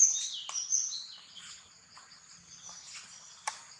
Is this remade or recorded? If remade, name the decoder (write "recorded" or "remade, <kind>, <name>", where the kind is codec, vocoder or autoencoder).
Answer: recorded